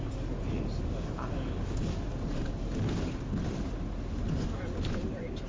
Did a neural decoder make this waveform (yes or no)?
no